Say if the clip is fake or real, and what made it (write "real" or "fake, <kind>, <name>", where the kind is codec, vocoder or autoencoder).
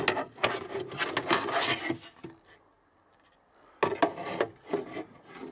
real